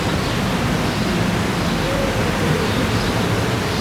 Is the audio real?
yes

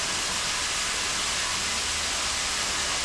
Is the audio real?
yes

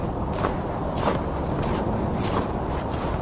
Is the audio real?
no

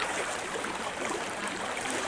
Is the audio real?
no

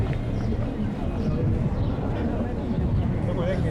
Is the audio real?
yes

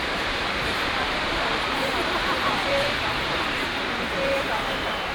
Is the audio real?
no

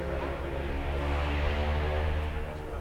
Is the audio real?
yes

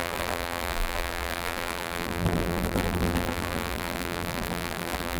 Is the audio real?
no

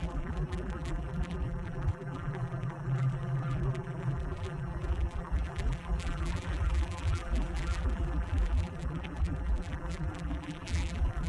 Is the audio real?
no